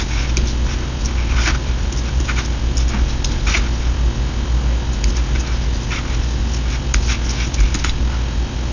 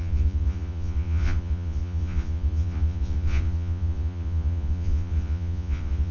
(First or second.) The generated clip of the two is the second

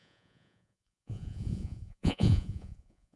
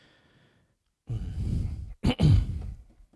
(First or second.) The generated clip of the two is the first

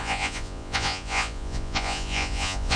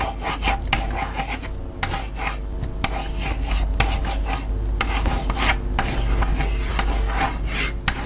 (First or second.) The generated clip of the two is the first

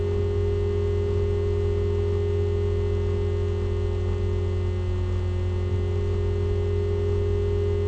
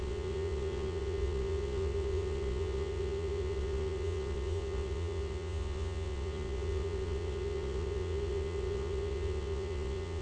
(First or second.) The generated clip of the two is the second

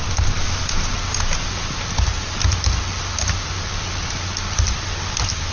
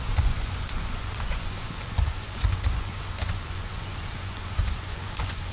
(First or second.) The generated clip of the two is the second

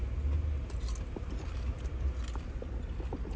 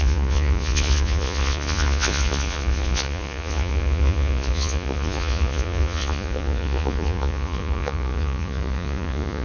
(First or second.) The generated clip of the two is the second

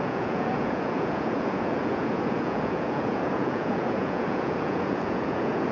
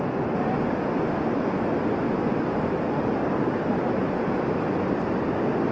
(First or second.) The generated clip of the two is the first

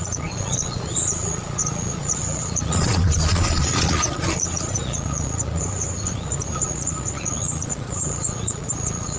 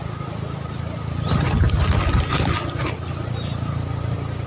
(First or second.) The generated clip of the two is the first